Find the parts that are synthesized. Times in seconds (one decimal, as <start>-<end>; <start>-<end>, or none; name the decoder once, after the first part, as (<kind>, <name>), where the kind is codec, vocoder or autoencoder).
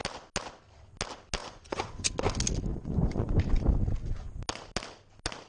1.4-2.1 (vocoder, Vocos); 2.7-3.3